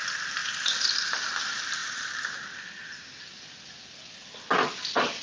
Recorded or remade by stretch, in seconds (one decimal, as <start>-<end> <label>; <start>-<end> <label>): 0.0-5.2 recorded

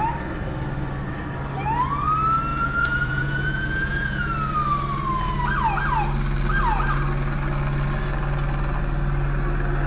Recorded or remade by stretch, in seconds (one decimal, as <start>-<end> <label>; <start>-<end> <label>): 0.0-2.5 recorded; 2.5-4.2 remade; 4.2-9.9 recorded